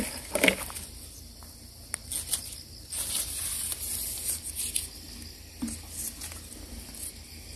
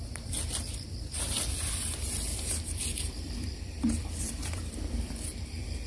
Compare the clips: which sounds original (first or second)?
first